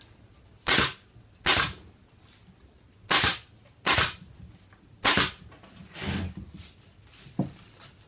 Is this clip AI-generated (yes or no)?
no